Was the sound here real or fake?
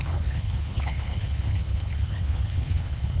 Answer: fake